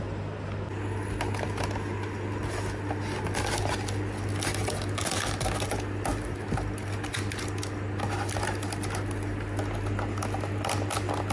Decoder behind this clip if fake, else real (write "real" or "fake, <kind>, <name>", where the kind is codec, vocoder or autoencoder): real